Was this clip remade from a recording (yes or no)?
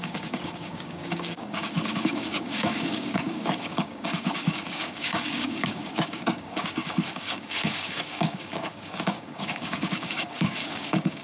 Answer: yes